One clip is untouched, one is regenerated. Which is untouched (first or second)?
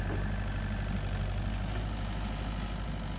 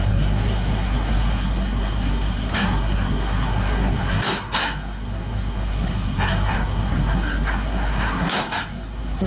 first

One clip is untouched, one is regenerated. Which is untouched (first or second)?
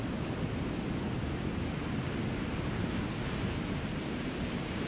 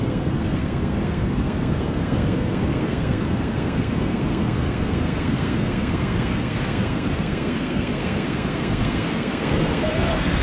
first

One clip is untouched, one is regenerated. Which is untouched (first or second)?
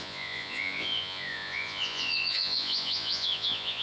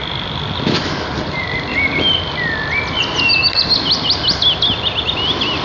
second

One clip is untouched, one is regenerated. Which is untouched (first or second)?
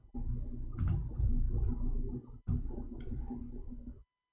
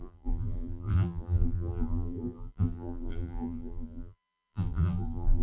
first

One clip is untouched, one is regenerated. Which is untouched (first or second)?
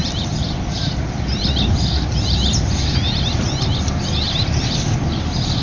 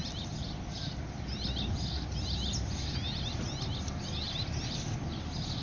second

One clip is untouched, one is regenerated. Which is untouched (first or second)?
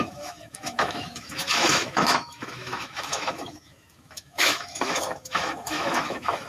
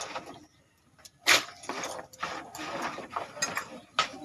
second